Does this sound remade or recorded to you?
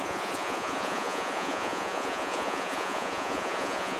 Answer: remade